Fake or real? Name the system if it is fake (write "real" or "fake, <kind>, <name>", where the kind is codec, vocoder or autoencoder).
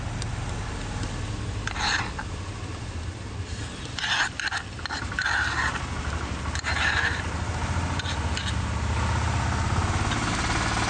real